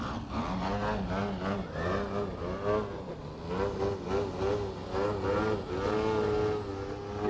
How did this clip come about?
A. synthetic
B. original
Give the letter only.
B